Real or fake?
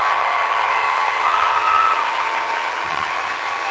fake